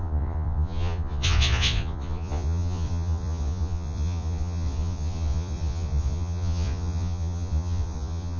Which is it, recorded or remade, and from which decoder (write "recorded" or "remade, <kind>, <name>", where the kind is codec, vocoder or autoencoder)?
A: remade, vocoder, Vocos